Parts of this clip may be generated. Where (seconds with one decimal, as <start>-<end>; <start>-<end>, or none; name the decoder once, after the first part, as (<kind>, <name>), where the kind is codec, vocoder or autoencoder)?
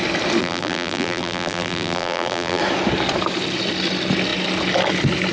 0.4-2.6 (vocoder, BigVGAN v2)